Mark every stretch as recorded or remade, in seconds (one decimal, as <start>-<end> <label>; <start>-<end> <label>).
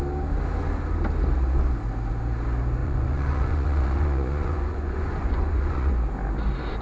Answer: 0.0-2.8 recorded; 2.8-5.9 remade; 5.9-6.8 recorded